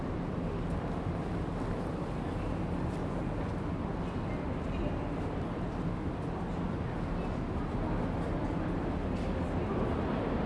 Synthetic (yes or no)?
no